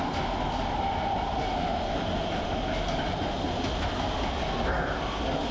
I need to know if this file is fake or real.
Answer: real